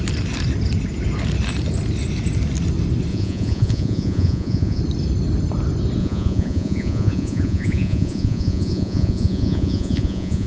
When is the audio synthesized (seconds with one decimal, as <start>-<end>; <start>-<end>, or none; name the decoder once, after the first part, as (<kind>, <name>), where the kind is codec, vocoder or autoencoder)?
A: 3.1-4.8 (vocoder, Vocos); 6.0-10.5